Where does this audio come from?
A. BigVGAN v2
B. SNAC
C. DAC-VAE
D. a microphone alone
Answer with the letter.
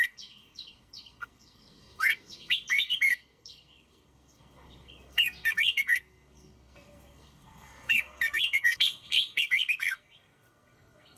B